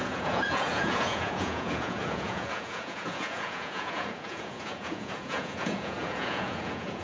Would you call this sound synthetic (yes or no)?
yes